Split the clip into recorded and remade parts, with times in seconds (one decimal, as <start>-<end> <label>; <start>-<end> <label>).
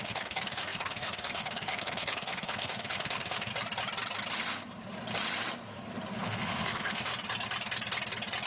0.0-3.5 remade; 3.5-6.2 recorded; 6.2-7.1 remade; 7.1-8.5 recorded